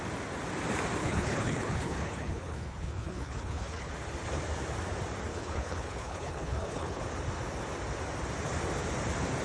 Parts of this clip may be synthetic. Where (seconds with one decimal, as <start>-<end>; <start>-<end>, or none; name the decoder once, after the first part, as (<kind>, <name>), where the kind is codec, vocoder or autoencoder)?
1.0-3.9 (codec, HILCodec); 5.3-7.0